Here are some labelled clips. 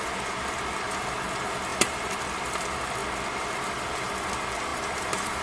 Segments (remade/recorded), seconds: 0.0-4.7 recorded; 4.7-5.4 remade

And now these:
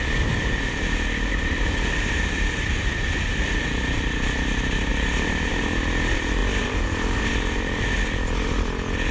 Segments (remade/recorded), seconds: 0.0-1.3 recorded; 1.3-3.0 remade; 3.0-4.9 recorded; 4.9-5.5 remade; 5.5-6.4 recorded; 6.4-7.8 remade; 7.8-9.1 recorded

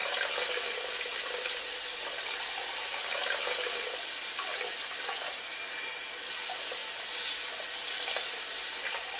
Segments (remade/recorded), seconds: 0.0-6.8 recorded; 6.8-7.5 remade; 7.5-9.2 recorded

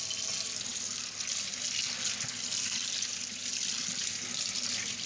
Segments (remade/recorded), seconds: 0.0-5.1 recorded

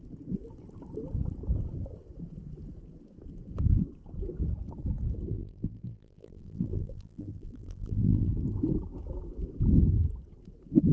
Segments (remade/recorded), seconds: 0.0-5.3 recorded; 5.3-8.3 remade; 8.3-10.9 recorded

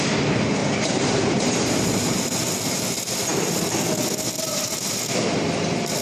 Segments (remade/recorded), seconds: 0.0-0.6 recorded; 0.6-2.2 remade; 2.2-6.0 recorded